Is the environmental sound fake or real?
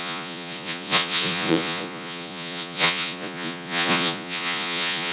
fake